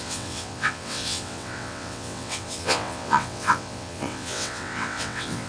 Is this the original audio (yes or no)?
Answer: no